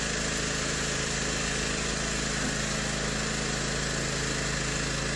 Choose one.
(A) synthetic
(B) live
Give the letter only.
B